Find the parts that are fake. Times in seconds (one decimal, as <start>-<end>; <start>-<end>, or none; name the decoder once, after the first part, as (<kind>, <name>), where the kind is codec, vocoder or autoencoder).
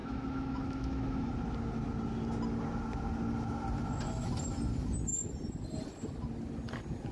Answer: 0.0-1.3 (autoencoder, DAC-VAE)